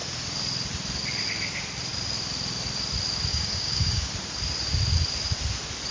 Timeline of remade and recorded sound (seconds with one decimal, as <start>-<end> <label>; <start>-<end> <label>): 0.0-3.3 recorded; 3.3-4.1 remade; 4.1-5.9 recorded